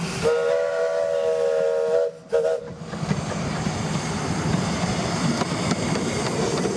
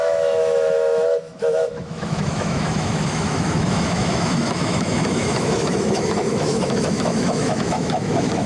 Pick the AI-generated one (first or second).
second